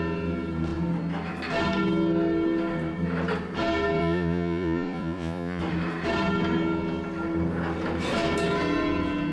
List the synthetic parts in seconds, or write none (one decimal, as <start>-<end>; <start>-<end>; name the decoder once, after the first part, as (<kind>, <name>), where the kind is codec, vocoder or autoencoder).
4.0-5.6 (vocoder, Vocos)